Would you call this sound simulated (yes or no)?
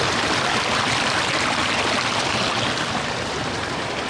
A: no